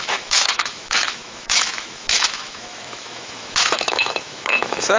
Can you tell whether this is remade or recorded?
remade